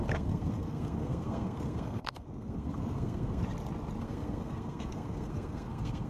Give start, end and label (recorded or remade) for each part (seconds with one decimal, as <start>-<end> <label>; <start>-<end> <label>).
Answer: 0.0-3.4 remade; 3.4-4.0 recorded; 4.0-6.1 remade